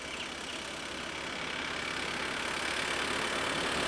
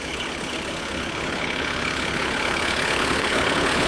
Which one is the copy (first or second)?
second